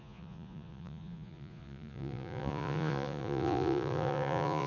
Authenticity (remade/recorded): remade